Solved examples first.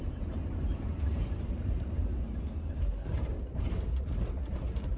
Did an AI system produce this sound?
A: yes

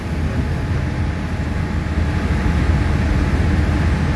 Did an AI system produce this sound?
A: no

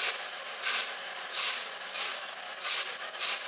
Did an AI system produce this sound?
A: no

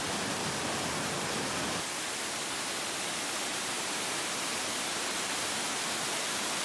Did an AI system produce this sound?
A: no